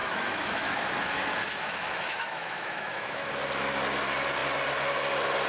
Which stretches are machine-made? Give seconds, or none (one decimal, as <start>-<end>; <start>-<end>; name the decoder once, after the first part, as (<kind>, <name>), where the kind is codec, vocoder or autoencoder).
0.0-3.3 (autoencoder, DAC-VAE)